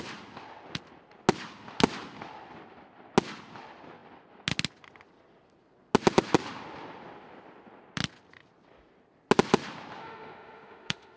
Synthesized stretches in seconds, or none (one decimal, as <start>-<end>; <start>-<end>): 10.0-11.2